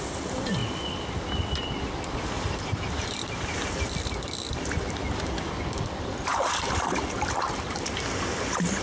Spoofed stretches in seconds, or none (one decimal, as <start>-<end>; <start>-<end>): 0.0-0.6; 1.8-8.8